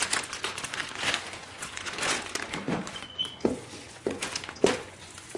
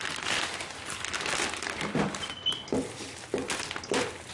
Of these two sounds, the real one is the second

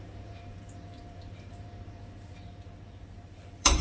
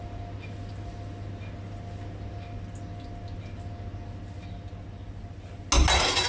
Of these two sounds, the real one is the second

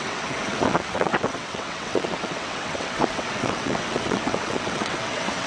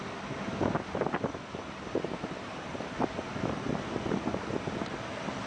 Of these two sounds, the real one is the second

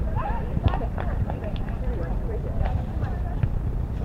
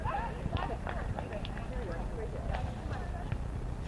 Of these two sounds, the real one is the second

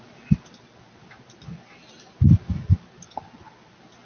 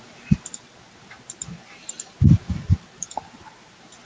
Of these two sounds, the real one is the first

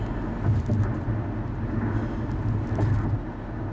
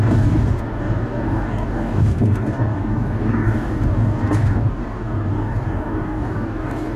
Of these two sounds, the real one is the first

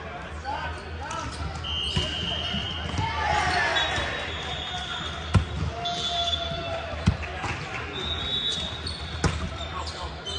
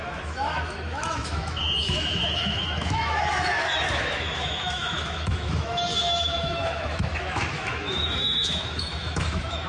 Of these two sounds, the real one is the first